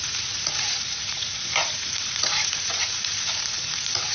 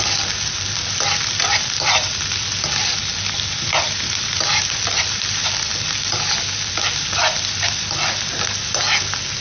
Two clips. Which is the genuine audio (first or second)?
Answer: second